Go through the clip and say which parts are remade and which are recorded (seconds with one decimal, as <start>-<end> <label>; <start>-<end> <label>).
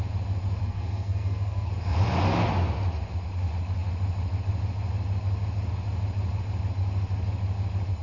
0.0-0.6 recorded; 0.6-1.7 remade; 1.7-8.0 recorded